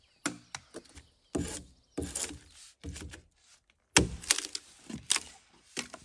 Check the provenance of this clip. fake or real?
real